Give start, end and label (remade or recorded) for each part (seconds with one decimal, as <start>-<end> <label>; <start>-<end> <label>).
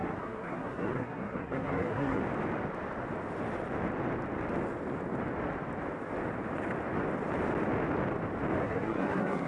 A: 0.0-2.2 remade; 2.2-8.6 recorded; 8.6-9.5 remade